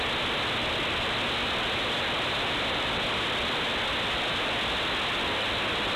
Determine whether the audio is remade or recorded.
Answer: recorded